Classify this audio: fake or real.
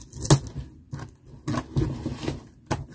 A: real